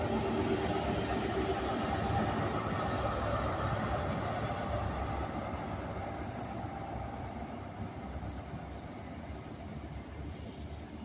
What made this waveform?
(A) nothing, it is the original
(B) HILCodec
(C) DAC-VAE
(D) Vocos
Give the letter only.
A